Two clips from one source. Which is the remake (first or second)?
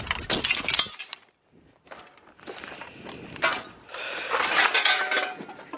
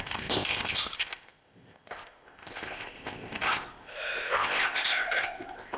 second